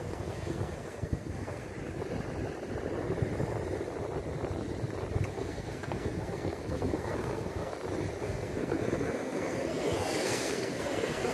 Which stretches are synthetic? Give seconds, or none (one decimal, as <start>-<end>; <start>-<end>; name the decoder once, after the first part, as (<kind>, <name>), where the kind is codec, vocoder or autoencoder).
0.0-1.7 (codec, SNAC); 5.3-7.7; 8.2-11.3